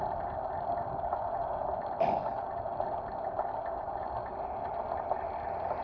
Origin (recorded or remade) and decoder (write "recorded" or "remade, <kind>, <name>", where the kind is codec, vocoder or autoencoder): recorded